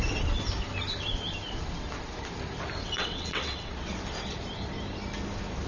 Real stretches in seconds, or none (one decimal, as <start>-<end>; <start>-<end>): 0.0-2.8; 3.7-5.7